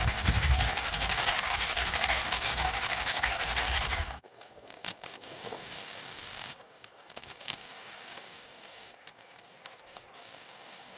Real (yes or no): no